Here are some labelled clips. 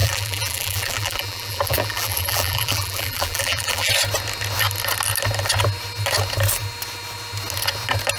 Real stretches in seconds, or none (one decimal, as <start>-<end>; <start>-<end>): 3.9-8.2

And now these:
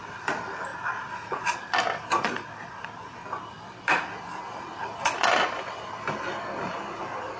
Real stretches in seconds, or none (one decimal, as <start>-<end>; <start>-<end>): 0.7-3.5

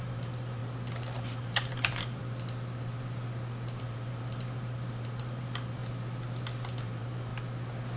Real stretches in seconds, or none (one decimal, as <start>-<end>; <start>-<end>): 0.6-1.2; 2.2-3.8; 5.8-6.8; 7.3-8.0